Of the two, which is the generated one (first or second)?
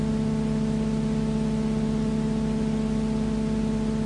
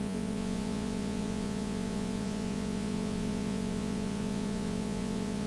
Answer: second